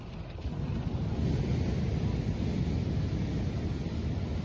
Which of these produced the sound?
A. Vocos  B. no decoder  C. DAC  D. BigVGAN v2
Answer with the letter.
B